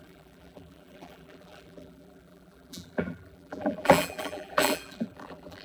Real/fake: fake